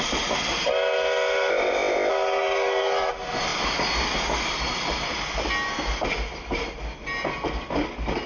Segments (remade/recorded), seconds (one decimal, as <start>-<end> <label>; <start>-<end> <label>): 0.0-1.5 recorded; 1.5-2.1 remade; 2.1-8.3 recorded